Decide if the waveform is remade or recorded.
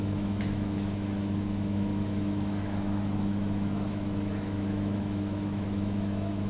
remade